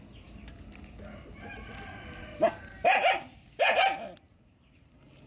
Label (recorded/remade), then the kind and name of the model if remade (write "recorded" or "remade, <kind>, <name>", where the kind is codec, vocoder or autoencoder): recorded